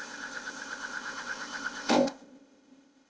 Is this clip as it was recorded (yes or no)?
no